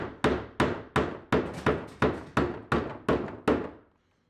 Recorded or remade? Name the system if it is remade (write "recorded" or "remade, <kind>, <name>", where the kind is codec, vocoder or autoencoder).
recorded